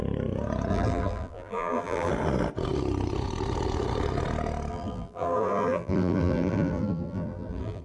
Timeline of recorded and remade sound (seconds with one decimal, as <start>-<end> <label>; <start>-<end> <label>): 0.0-0.7 recorded; 0.7-2.1 remade; 2.1-4.7 recorded; 4.7-7.8 remade